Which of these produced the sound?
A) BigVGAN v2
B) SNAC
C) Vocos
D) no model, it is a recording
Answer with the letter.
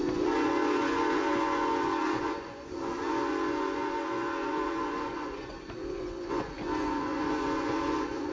C